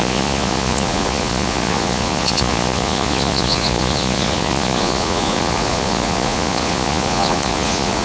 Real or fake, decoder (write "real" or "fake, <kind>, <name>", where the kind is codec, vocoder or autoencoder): fake, vocoder, Vocos